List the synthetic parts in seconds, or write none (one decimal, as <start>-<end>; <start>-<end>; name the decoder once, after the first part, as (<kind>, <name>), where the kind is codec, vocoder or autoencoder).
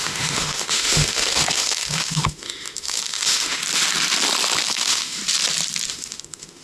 0.0-3.6 (autoencoder, DAC-VAE); 4.7-5.2; 5.9-6.6